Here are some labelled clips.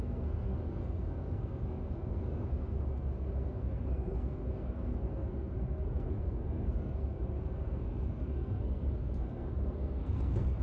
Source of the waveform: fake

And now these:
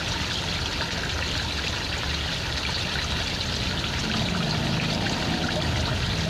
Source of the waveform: real